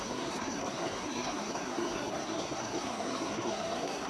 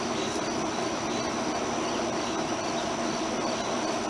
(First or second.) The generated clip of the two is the first